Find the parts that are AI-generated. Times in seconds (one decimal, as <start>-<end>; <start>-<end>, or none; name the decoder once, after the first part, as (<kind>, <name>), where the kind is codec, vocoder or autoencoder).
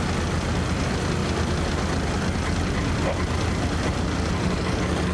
none